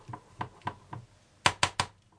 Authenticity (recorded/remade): recorded